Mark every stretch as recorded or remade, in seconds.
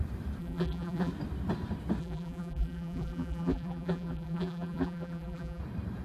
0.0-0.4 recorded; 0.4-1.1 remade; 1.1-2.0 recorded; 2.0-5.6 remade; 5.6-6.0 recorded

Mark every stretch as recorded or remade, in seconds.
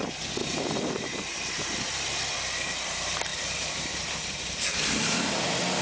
0.0-0.4 recorded; 0.4-1.1 remade; 1.1-3.3 recorded; 3.3-5.0 remade; 5.0-5.8 recorded